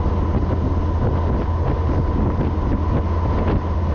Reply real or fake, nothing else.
real